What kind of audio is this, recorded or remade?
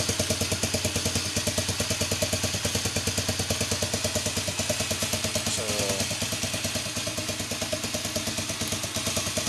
recorded